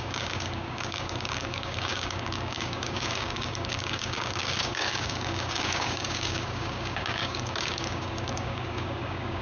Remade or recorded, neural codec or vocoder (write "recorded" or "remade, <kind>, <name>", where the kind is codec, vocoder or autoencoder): remade, codec, DAC